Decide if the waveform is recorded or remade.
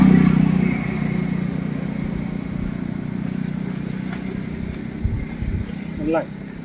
recorded